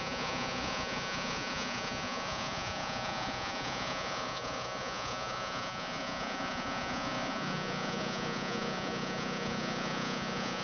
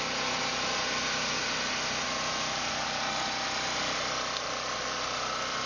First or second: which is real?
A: second